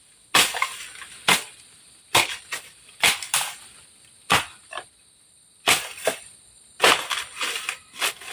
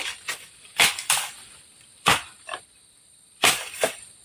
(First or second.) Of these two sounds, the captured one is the first